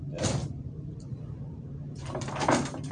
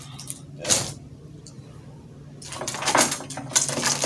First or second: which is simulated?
first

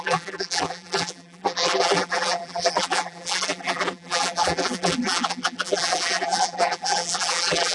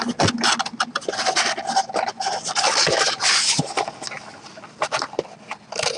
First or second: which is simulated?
first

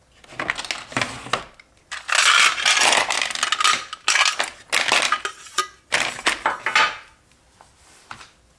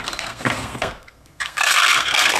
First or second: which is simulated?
second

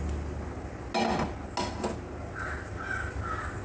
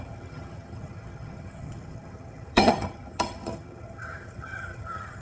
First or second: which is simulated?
second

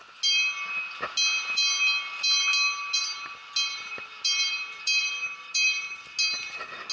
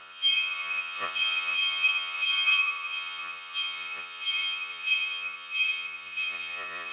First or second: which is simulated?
second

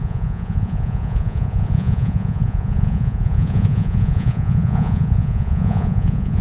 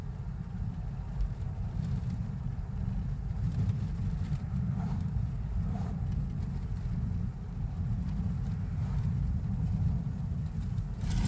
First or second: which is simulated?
first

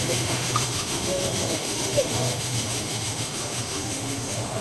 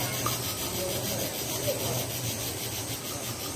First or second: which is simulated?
first